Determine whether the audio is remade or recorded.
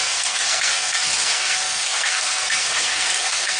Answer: remade